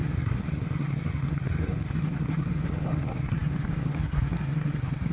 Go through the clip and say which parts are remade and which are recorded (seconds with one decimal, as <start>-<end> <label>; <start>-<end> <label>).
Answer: 0.0-5.1 remade